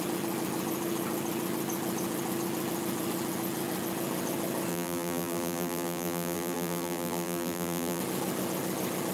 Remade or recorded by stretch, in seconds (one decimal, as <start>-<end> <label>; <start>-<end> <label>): 0.0-4.7 recorded; 4.7-8.0 remade; 8.0-9.1 recorded